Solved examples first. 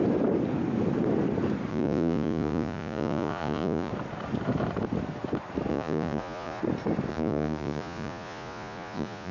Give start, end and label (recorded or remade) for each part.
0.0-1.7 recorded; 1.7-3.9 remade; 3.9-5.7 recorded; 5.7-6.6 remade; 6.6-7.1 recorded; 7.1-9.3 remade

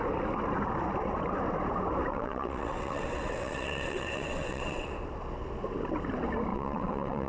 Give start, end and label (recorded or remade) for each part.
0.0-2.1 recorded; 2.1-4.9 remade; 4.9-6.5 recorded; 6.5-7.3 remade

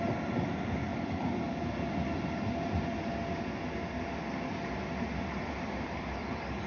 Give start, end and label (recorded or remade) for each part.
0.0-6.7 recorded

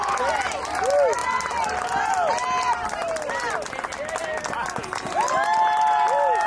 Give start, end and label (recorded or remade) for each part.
0.0-6.5 recorded